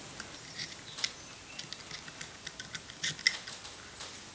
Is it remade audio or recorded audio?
recorded